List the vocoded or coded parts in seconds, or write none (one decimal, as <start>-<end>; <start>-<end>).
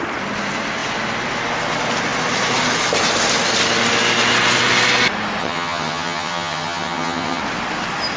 5.4-7.4